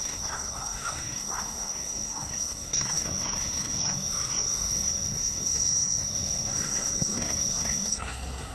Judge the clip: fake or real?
fake